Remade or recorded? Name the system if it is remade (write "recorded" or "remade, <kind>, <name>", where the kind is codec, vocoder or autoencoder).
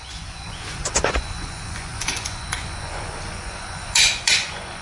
remade, vocoder, Vocos